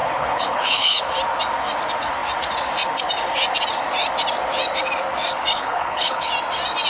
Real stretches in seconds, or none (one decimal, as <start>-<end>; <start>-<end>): 1.0-5.5; 6.3-6.9